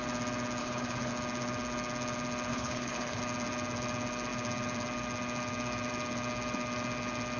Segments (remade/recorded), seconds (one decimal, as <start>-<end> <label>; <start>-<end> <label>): 0.0-0.6 recorded; 0.6-1.1 remade; 1.1-2.5 recorded; 2.5-3.2 remade; 3.2-7.4 recorded